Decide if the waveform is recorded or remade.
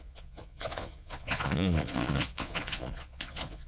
remade